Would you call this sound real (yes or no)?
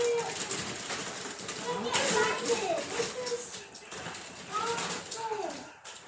yes